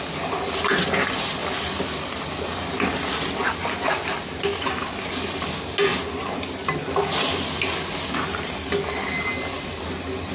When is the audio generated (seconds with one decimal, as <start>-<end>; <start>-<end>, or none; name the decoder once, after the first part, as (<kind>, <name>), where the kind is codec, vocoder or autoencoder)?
none